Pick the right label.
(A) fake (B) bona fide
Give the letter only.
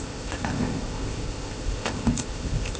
A